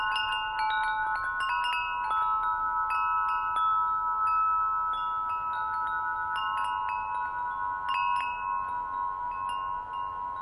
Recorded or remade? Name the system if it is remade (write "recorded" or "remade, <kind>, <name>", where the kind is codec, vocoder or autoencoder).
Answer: recorded